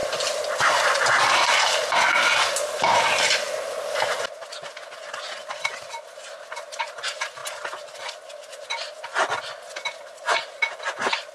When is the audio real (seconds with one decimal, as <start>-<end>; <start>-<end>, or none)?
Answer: 4.1-11.3